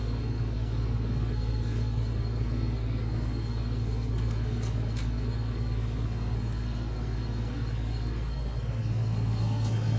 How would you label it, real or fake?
fake